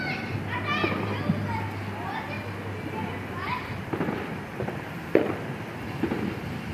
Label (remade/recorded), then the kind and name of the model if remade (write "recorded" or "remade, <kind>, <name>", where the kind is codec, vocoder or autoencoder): recorded